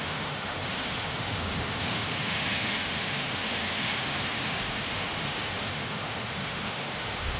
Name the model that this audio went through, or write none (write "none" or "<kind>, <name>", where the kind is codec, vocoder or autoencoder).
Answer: autoencoder, DAC-VAE